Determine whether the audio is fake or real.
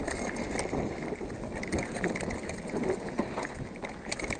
real